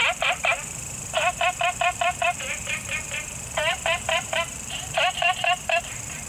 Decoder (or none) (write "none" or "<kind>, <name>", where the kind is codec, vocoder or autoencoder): vocoder, BigVGAN v2